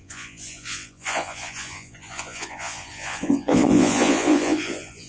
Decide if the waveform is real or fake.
fake